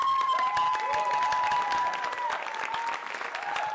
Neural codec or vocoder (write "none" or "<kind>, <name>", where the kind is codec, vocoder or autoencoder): none